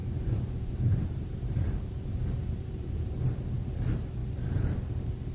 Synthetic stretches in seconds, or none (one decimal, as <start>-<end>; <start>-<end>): 0.0-3.2; 4.2-5.3

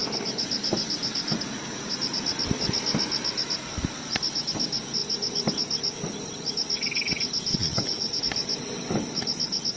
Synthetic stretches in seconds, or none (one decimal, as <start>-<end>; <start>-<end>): 7.5-8.2